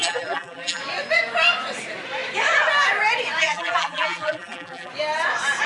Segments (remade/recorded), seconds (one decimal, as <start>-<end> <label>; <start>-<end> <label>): 0.0-0.8 remade; 0.8-3.4 recorded; 3.4-4.9 remade; 4.9-5.7 recorded

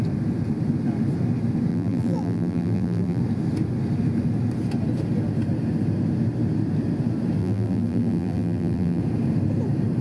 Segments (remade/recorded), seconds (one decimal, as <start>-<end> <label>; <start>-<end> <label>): 0.0-1.7 recorded; 1.7-3.2 remade; 3.2-7.4 recorded; 7.4-9.0 remade; 9.0-10.0 recorded

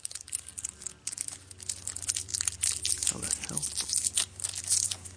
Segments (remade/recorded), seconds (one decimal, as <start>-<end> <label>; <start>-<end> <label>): 0.0-0.5 remade; 0.5-1.9 recorded; 1.9-2.3 remade; 2.3-2.8 recorded; 2.8-3.6 remade; 3.6-4.6 recorded; 4.6-5.2 remade